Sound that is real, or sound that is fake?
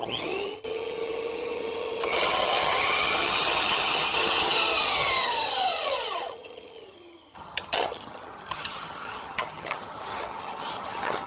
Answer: fake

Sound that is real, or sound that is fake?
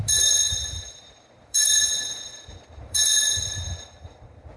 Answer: fake